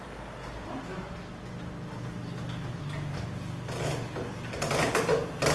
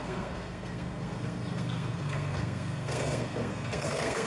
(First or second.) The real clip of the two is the first